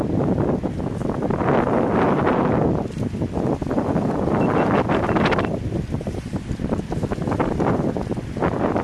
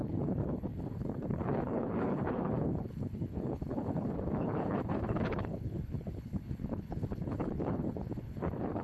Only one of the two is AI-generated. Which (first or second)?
second